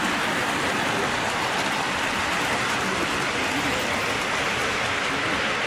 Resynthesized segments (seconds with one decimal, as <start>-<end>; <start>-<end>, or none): 0.0-3.4